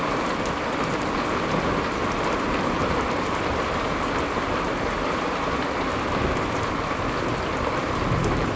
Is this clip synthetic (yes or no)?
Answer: no